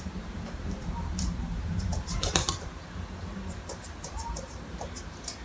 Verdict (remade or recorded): remade